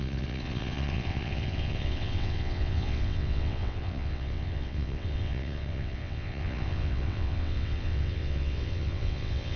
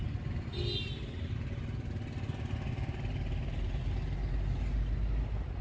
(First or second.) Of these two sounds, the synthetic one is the first